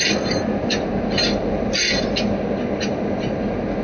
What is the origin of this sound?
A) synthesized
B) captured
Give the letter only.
B